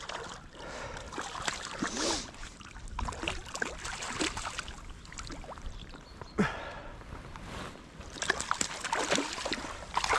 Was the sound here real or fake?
real